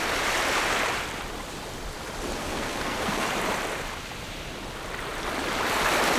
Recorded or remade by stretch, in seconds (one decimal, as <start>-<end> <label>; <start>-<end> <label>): 0.0-2.4 recorded; 2.4-3.3 remade; 3.3-6.2 recorded